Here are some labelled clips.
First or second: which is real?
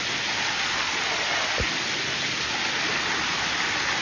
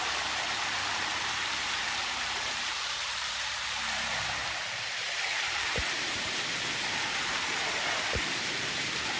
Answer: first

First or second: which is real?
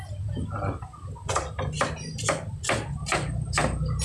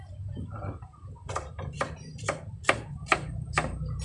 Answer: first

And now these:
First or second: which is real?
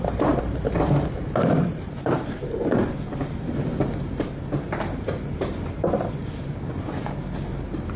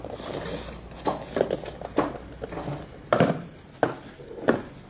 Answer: second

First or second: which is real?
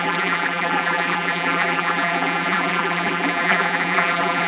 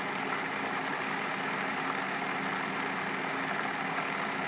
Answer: second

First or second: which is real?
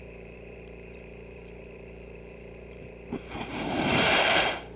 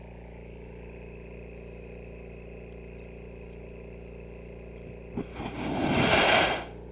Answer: second